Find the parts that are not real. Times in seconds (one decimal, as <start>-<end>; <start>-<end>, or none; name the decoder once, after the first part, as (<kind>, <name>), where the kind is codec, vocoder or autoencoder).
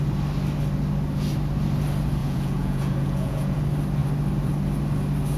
2.2-3.6 (vocoder, Vocos)